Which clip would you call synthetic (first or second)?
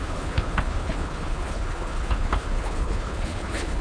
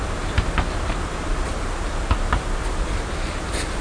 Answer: first